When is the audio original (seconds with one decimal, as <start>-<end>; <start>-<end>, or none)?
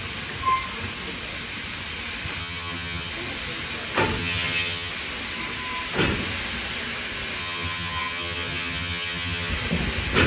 0.0-2.4; 3.1-4.2; 4.9-7.4; 9.5-10.3